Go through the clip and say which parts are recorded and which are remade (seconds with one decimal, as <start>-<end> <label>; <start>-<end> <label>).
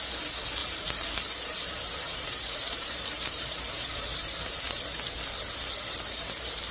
0.0-0.6 recorded; 0.6-4.6 remade; 4.6-6.7 recorded